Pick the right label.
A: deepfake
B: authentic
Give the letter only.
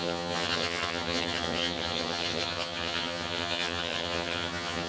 A